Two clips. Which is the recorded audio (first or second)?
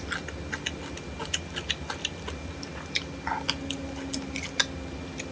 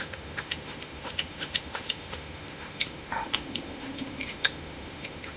first